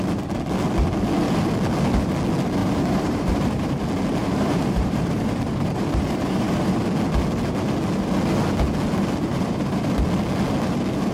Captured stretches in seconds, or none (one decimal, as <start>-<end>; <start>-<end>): 0.0-2.6; 3.8-4.2; 6.8-9.3; 9.8-11.1